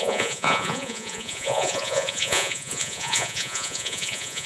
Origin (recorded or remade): remade